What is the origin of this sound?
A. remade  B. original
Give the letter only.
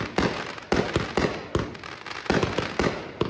B